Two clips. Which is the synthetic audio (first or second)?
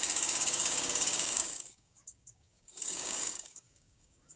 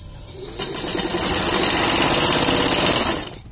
first